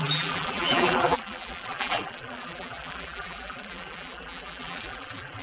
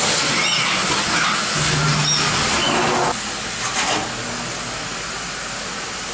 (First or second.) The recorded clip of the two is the second